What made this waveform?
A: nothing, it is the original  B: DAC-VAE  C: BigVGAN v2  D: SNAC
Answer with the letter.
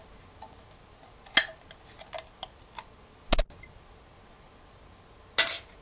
A